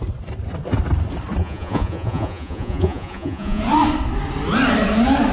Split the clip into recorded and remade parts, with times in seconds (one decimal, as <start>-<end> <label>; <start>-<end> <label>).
0.0-1.4 recorded; 1.4-3.6 remade; 3.6-5.3 recorded